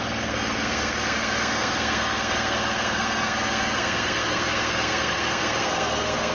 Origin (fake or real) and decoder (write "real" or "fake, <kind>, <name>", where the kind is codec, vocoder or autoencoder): fake, codec, SNAC